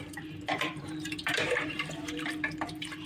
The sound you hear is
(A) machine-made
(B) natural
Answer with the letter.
A